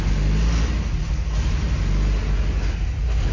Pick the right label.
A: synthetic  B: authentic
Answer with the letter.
B